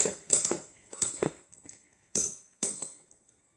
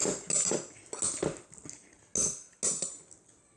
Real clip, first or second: second